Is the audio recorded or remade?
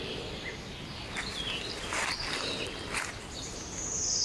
recorded